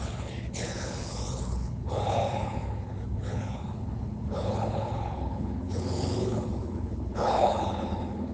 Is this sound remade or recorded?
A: remade